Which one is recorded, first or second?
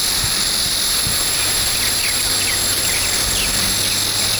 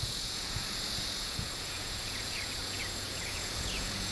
first